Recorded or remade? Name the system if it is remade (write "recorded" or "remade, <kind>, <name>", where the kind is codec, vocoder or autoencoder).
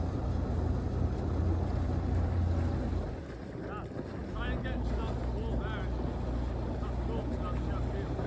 recorded